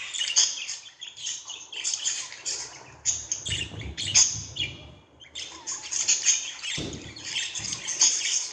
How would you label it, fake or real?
fake